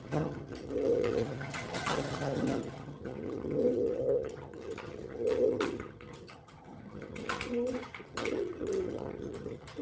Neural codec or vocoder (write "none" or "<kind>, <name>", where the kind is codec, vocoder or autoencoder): vocoder, HiFi-GAN